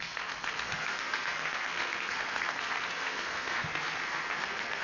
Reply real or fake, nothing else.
fake